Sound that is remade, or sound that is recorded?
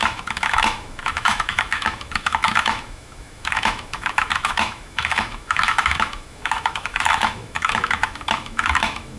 remade